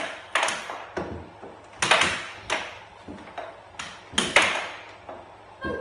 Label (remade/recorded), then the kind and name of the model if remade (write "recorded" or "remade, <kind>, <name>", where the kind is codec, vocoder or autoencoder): recorded